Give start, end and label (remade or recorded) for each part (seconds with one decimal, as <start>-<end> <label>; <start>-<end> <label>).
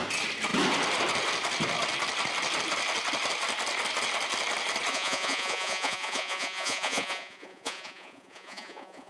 0.0-4.9 recorded; 4.9-9.1 remade